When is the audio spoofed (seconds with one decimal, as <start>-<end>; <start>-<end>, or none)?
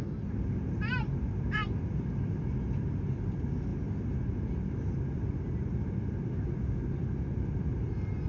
none